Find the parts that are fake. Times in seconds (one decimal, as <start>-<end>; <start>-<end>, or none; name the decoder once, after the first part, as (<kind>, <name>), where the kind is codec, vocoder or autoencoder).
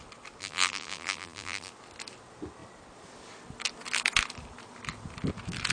0.4-1.7 (vocoder, BigVGAN v2)